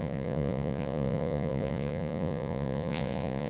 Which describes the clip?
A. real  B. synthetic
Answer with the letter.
B